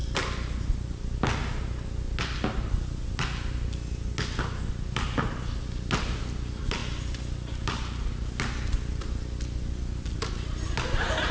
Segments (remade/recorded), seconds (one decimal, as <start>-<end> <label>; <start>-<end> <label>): 0.0-11.3 recorded